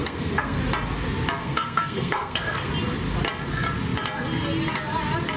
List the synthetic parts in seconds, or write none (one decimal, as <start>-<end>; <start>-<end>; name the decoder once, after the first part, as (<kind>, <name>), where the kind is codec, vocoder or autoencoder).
0.0-0.6 (codec, SNAC); 1.4-2.7